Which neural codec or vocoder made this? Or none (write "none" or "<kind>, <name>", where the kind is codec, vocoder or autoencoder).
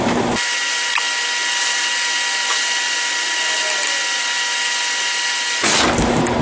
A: none